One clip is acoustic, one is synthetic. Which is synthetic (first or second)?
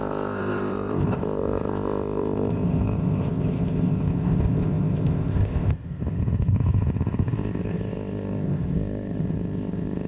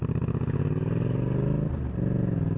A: first